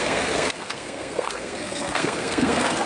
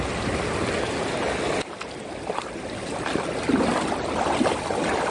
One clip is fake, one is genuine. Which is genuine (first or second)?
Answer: second